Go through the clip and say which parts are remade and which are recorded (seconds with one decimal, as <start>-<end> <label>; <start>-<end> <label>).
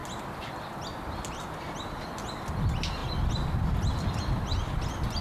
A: 0.0-5.2 recorded